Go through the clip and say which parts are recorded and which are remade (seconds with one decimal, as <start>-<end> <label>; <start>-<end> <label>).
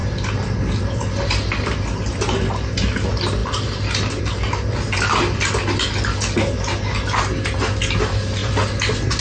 0.0-9.2 recorded